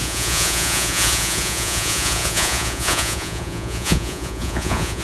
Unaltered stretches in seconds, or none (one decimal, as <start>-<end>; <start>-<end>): none